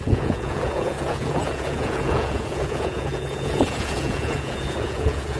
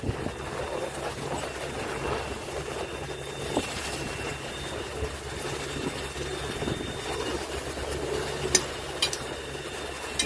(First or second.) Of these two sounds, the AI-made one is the first